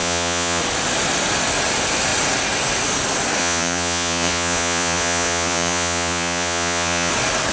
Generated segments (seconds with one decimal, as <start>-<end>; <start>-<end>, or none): 0.0-0.6; 3.4-7.1